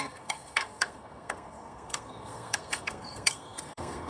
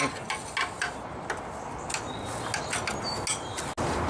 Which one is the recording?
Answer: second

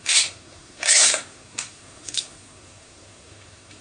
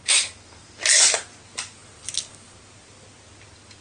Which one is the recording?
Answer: second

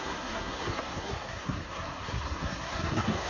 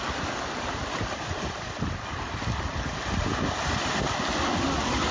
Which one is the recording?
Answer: second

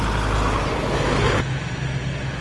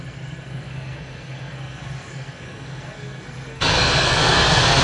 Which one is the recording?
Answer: first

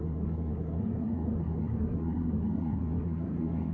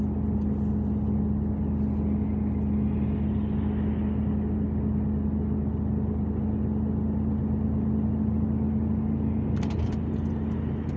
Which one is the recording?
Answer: second